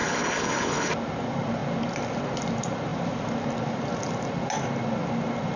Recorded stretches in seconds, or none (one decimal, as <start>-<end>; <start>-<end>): 0.9-5.6